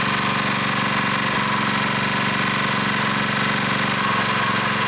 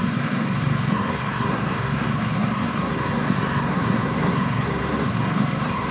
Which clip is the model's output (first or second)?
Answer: second